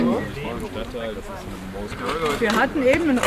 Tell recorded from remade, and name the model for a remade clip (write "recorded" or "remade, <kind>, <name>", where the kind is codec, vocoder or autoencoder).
recorded